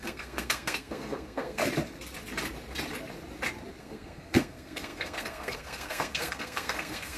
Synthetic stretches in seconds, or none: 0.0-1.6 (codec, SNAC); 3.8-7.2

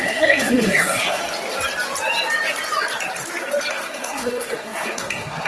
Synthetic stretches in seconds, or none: 0.0-1.2 (codec, SNAC); 3.7-5.5

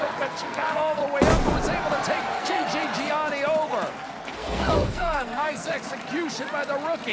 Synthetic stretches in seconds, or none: 0.0-1.0 (codec, SNAC); 2.3-2.7; 3.9-5.7

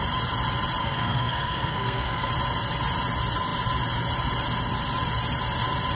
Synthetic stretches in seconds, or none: 0.8-2.3 (codec, SNAC)

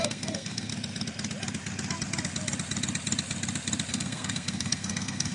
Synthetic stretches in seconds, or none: 0.0-0.7 (codec, SNAC); 3.9-5.3